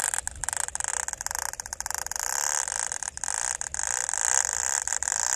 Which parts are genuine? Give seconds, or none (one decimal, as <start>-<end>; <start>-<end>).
0.0-5.4